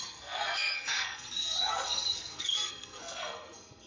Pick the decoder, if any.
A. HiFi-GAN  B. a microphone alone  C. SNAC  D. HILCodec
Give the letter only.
C